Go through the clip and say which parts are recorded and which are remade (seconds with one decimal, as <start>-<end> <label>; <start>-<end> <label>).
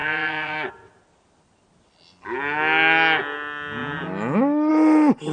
0.0-0.7 remade; 0.7-5.3 recorded